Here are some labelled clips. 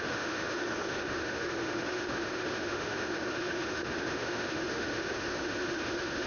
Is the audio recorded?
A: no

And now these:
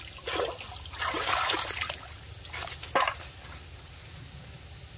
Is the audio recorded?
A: yes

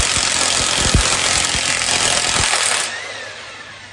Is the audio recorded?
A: yes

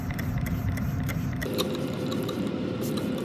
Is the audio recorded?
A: no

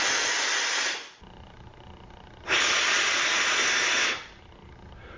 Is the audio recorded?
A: yes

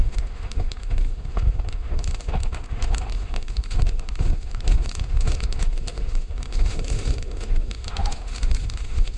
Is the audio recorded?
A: no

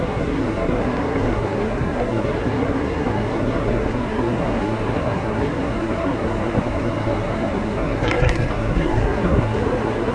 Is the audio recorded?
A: no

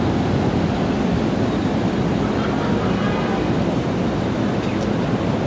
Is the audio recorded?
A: yes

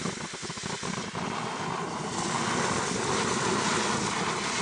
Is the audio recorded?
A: yes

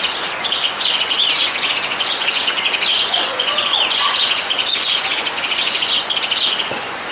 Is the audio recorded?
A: no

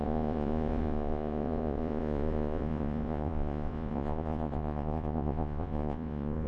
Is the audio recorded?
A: no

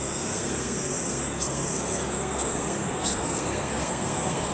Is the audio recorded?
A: no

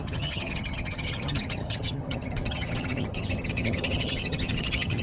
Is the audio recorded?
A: no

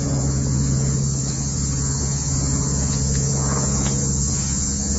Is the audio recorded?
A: no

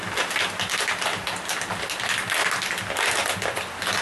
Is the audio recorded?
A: yes